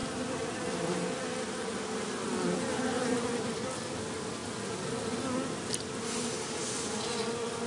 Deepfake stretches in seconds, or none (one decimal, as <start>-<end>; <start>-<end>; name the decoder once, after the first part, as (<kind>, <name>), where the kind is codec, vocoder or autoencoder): 0.0-1.2 (vocoder, BigVGAN v2)